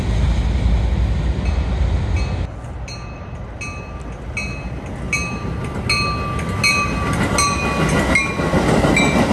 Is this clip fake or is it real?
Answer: real